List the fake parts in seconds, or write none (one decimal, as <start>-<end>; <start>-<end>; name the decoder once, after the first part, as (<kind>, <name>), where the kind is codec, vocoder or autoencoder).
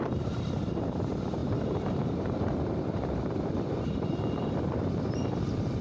0.0-5.8 (vocoder, BigVGAN v2)